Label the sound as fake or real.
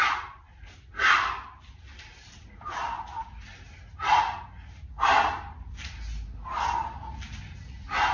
real